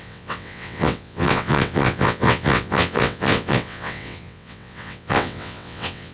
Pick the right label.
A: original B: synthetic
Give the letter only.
B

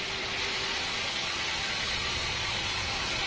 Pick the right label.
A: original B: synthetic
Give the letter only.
B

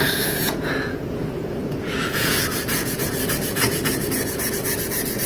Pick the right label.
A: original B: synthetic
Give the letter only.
B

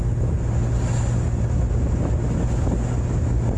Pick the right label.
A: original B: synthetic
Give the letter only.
A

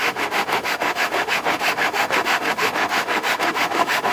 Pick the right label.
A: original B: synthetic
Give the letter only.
B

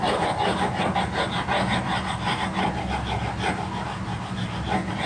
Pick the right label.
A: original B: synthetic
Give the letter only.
A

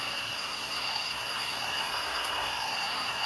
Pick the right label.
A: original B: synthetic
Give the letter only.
B